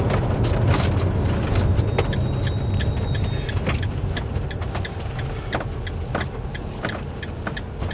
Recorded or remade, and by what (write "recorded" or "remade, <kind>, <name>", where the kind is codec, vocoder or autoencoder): recorded